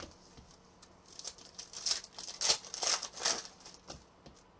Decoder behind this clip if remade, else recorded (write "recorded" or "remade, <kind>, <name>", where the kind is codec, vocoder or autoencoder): recorded